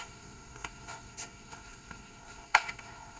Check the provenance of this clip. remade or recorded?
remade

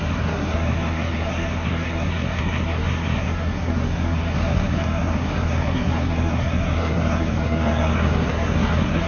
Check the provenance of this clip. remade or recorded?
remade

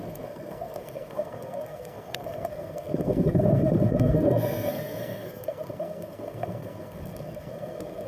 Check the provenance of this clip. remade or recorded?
remade